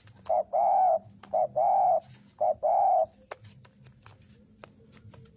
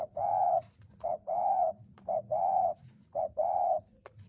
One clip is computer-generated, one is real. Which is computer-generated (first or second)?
second